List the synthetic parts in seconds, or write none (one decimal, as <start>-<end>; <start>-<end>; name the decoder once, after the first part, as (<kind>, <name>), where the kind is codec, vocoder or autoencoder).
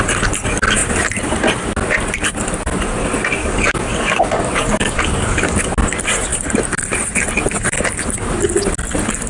3.4-5.7 (codec, DAC)